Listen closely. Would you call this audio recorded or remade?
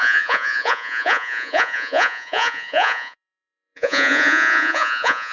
remade